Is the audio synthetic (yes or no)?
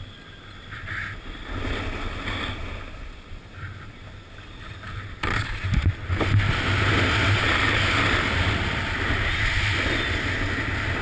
no